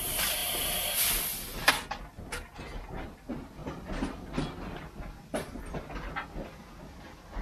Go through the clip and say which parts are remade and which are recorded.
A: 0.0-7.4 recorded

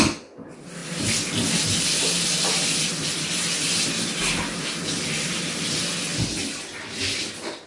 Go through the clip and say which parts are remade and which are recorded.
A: 0.0-7.7 recorded

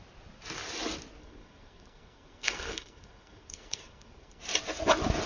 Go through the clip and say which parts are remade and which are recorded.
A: 0.0-1.2 recorded; 1.2-4.4 remade; 4.4-5.3 recorded

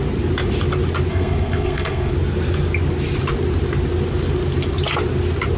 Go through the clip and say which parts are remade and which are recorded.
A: 0.0-1.1 recorded; 1.1-2.1 remade; 2.1-5.6 recorded

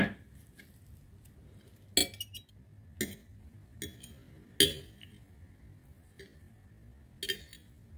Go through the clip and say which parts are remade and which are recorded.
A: 0.0-8.0 recorded

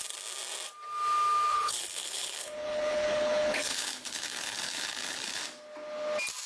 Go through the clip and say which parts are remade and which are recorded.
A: 0.0-1.5 recorded; 1.5-5.4 remade; 5.4-6.5 recorded

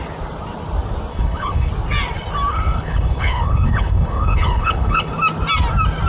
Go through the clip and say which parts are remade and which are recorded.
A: 0.0-1.1 recorded; 1.1-1.7 remade; 1.7-2.5 recorded; 2.5-5.1 remade; 5.1-6.1 recorded